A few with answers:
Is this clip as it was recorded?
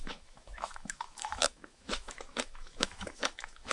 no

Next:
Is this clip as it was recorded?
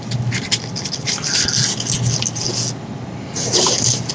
yes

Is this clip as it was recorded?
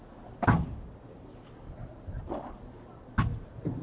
yes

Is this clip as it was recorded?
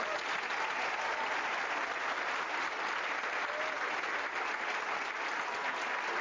yes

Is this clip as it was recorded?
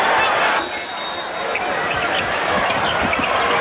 yes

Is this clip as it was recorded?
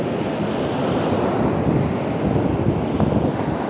yes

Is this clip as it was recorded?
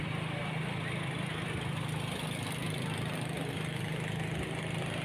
yes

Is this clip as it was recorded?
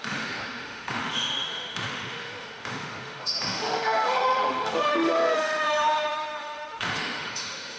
no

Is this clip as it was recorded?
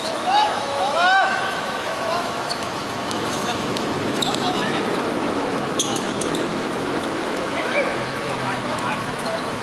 no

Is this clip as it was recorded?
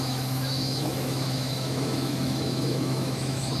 no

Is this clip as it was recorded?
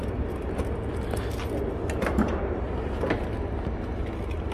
yes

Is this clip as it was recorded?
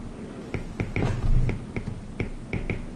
yes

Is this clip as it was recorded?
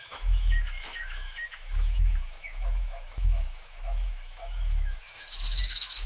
no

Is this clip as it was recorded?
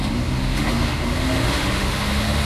no